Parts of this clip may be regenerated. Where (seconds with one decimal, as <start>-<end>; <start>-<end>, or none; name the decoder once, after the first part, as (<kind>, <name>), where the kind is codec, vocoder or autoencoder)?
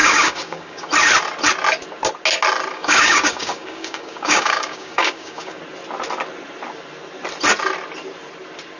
0.0-0.9 (codec, DAC); 2.7-5.6